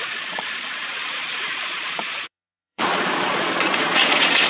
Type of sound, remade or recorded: remade